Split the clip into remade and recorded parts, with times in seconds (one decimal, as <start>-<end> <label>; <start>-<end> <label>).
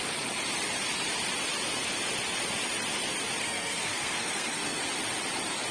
0.0-3.4 recorded; 3.4-4.8 remade; 4.8-5.7 recorded